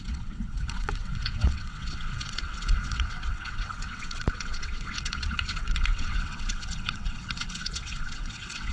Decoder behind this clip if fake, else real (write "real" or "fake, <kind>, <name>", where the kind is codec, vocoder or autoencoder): fake, vocoder, WaveNeXt